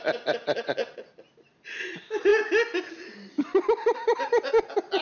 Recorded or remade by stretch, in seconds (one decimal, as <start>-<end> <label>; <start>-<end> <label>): 0.0-5.0 recorded